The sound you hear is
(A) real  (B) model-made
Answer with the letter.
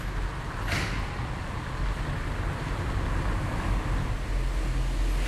A